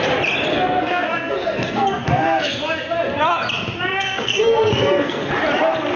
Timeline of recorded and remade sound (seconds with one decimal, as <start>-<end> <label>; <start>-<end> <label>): 0.0-0.5 recorded; 0.5-2.6 remade; 2.6-3.9 recorded; 3.9-5.3 remade; 5.3-6.0 recorded